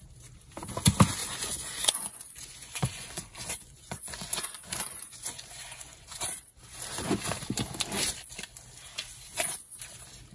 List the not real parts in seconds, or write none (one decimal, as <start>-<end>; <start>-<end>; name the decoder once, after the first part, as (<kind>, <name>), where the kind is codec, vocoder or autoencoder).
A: 1.2-6.2 (vocoder, Vocos); 9.3-9.8